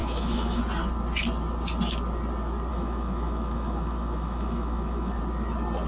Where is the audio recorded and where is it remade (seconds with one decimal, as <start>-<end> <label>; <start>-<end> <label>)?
0.0-0.6 remade; 0.6-2.7 recorded; 2.7-5.2 remade; 5.2-5.9 recorded